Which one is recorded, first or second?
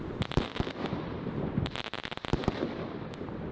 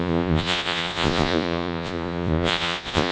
first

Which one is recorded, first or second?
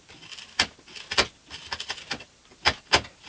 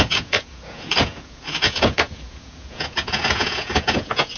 first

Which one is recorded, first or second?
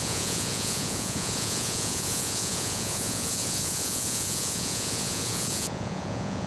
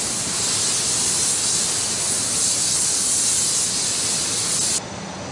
second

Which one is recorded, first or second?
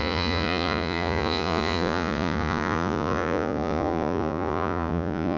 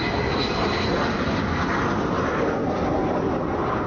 second